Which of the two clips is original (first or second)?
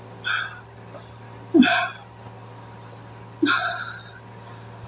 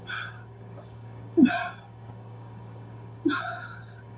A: first